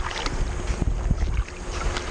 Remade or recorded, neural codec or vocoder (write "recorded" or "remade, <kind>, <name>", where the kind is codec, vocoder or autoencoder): recorded